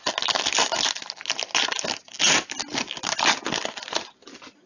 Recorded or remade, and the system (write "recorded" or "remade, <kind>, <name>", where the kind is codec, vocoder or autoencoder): recorded